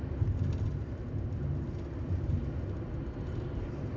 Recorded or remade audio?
recorded